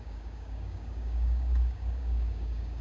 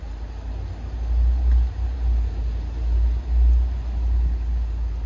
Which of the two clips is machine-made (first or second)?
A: first